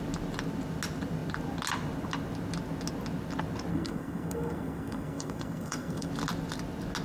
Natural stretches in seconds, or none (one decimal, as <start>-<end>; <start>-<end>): 0.0-3.7; 6.1-7.0